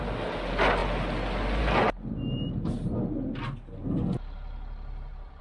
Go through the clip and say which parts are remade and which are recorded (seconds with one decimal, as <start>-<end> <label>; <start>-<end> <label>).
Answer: 0.0-5.4 recorded